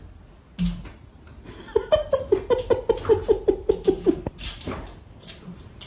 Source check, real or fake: real